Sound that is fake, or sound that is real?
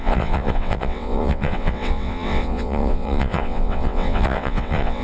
fake